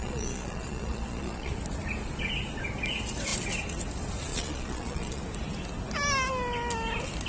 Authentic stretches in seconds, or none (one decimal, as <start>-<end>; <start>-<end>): 1.5-4.3; 5.2-7.3